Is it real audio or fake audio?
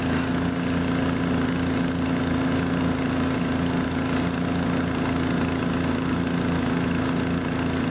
real